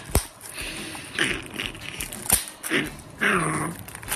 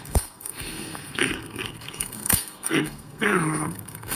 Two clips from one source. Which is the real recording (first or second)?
first